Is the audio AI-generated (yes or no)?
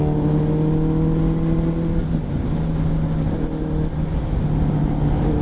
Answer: no